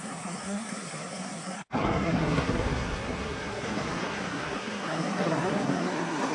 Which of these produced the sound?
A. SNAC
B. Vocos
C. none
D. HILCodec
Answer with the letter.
A